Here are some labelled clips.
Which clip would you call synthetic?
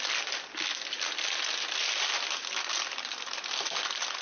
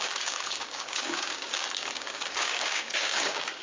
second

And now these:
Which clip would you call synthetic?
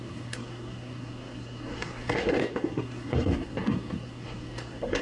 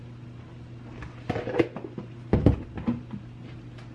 first